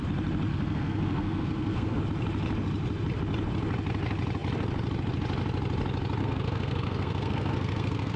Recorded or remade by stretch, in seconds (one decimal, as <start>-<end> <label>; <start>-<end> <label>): 0.0-0.5 recorded; 0.5-2.0 remade; 2.0-6.2 recorded; 6.2-8.2 remade